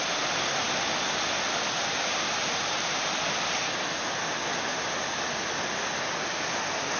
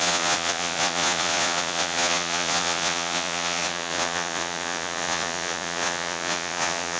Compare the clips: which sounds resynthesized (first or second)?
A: second